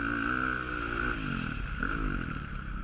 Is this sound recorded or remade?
recorded